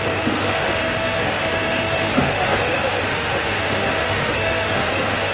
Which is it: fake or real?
fake